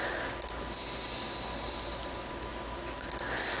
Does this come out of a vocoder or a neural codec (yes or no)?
no